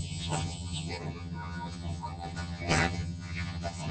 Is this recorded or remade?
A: remade